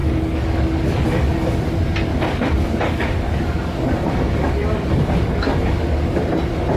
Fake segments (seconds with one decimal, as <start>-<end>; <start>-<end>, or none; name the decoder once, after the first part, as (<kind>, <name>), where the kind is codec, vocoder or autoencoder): 0.0-1.6 (codec, DAC); 2.1-6.2